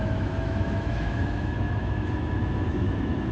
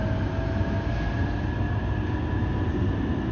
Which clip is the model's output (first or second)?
first